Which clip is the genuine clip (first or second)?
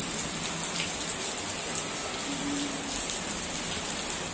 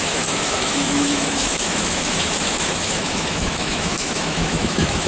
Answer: first